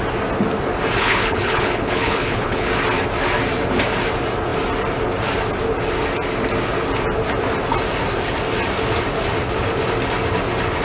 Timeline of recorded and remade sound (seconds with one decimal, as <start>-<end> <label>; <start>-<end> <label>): 0.0-1.0 recorded; 1.0-2.7 remade; 2.7-10.8 recorded